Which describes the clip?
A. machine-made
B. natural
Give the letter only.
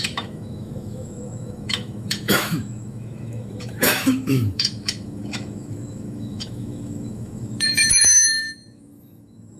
A